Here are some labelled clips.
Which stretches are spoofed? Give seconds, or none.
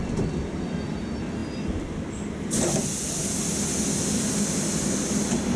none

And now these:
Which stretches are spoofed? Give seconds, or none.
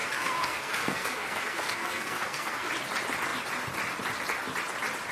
0.0-2.7 (codec, SNAC)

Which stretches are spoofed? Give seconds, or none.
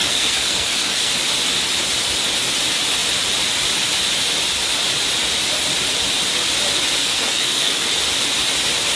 0.0-1.1 (codec, SNAC); 7.0-7.9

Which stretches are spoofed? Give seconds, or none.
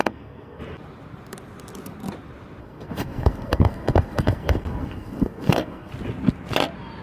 0.0-0.6 (codec, SNAC); 2.6-5.9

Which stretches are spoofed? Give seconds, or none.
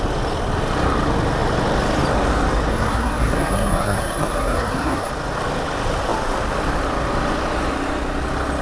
2.7-5.1 (codec, SNAC)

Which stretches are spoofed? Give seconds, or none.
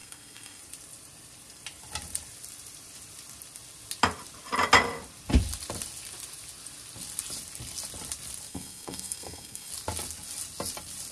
0.0-0.6 (codec, SNAC); 8.5-9.7